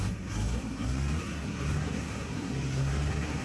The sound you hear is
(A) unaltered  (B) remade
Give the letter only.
B